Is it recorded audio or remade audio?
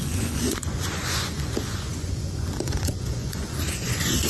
remade